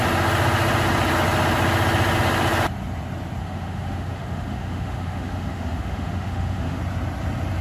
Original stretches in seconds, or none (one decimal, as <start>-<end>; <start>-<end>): 0.0-3.4; 6.8-7.6